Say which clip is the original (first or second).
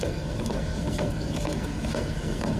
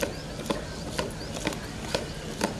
second